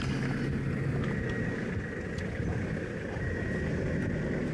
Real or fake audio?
real